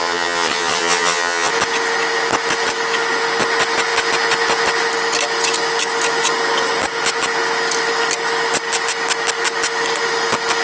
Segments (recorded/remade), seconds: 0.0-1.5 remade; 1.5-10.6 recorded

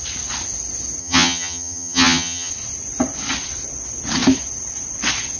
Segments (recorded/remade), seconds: 0.0-1.0 recorded; 1.0-2.5 remade; 2.5-5.4 recorded